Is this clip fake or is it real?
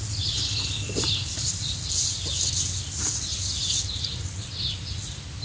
real